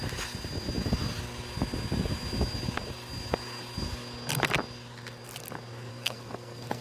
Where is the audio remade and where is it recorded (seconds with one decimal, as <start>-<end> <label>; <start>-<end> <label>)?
0.0-5.9 recorded; 5.9-6.8 remade